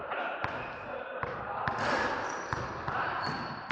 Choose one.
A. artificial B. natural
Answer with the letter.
B